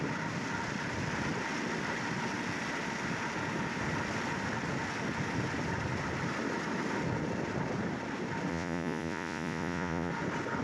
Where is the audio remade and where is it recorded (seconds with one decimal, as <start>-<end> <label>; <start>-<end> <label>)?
0.0-8.5 recorded; 8.5-10.1 remade; 10.1-10.6 recorded